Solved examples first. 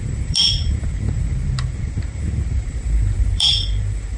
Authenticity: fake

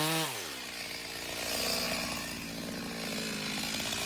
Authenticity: real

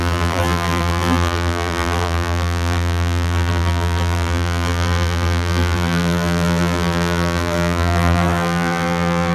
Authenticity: fake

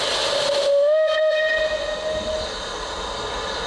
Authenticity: real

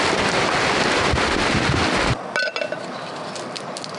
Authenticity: real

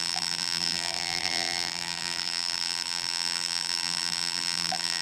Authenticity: fake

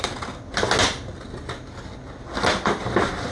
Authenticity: real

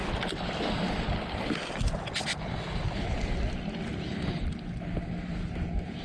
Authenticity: real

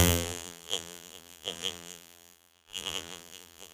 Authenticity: fake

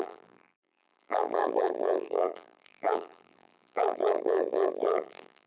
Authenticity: fake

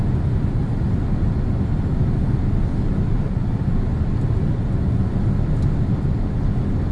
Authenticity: real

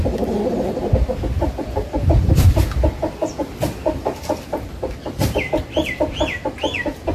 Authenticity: fake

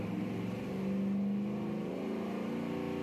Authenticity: real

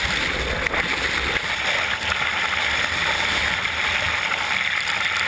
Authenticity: real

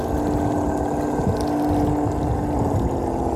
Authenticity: real